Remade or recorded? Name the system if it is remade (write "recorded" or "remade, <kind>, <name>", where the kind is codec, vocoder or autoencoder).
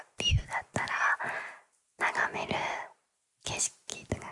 recorded